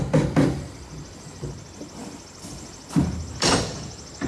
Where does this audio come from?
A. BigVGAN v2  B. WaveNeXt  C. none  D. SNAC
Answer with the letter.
C